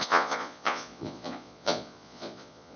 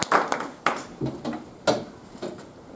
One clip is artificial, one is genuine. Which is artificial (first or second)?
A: first